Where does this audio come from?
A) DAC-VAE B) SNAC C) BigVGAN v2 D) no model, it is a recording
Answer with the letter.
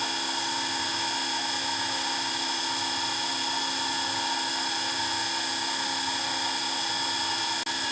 D